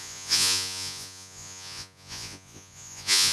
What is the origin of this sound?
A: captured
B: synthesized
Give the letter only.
B